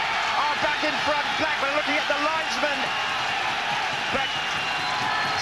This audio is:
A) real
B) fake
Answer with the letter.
B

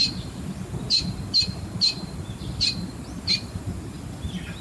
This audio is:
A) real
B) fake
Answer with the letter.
A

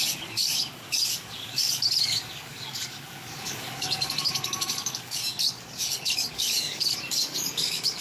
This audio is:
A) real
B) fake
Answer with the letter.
B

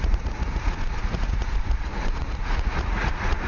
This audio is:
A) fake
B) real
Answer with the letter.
A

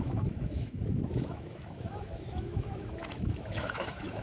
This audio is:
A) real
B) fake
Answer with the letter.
B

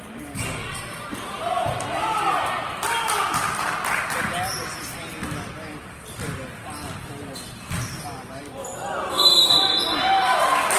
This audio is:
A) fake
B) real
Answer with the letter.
B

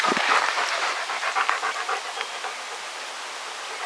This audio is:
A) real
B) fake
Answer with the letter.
A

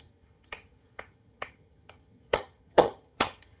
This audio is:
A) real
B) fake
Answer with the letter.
B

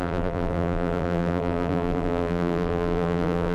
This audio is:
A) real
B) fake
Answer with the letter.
B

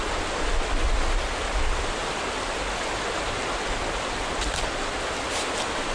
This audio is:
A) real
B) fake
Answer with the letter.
A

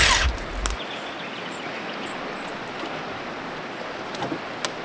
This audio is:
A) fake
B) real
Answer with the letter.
B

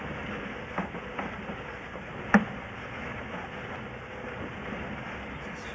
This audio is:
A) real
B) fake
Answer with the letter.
A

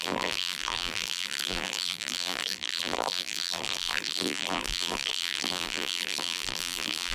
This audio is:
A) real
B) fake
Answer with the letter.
B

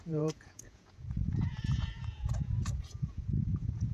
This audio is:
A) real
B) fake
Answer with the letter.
B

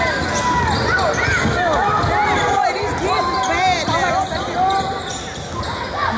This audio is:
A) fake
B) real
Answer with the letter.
B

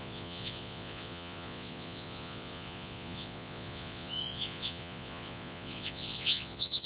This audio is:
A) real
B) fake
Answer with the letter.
B